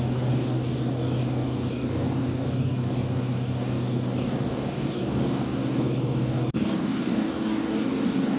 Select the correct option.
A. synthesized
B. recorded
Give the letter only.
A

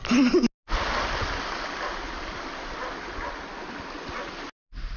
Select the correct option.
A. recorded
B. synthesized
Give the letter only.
A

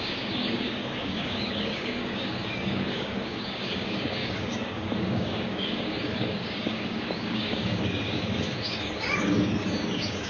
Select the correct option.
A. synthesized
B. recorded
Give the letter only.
A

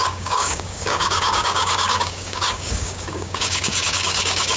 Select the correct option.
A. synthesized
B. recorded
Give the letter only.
A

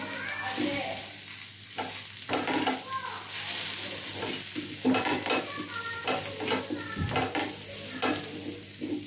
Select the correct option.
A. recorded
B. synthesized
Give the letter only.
A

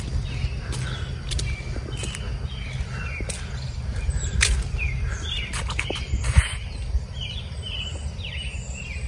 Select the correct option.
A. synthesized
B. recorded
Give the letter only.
B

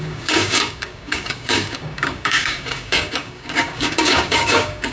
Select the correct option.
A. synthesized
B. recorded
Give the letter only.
A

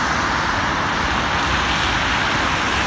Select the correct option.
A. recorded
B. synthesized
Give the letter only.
A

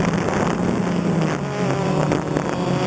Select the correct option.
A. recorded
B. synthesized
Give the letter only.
A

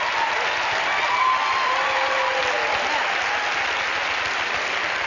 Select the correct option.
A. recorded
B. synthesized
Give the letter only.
A